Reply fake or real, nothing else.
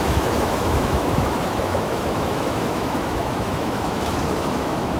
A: fake